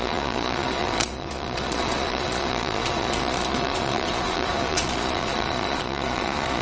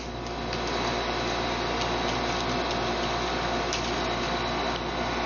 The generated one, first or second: first